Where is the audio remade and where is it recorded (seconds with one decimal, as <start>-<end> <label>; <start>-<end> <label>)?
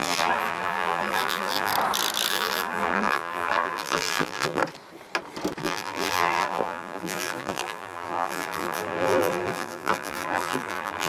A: 0.0-1.7 remade; 1.7-2.3 recorded; 2.3-4.6 remade; 4.6-5.6 recorded; 5.6-11.1 remade